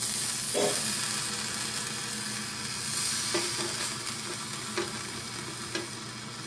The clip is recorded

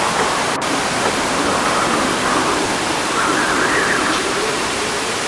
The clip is recorded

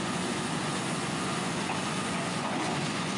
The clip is remade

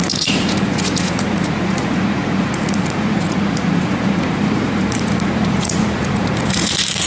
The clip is remade